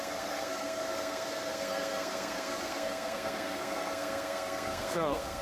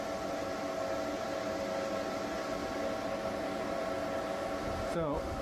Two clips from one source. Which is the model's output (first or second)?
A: first